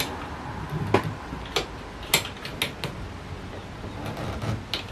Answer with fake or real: real